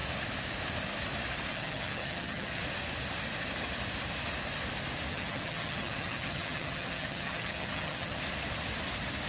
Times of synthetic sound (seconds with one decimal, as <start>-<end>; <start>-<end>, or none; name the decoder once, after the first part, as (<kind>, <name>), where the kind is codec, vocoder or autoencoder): 1.5-2.6 (vocoder, HiFi-GAN); 5.1-8.2